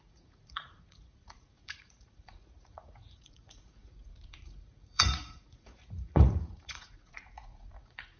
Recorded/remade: remade